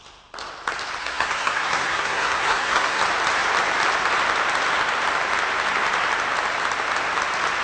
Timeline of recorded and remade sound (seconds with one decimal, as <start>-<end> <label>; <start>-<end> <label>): 0.0-1.0 recorded; 1.0-3.0 remade; 3.0-7.6 recorded